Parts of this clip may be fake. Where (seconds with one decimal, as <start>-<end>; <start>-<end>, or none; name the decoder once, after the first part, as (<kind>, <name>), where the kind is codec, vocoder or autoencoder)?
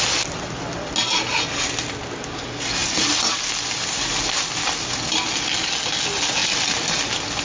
6.4-7.0 (vocoder, BigVGAN v2)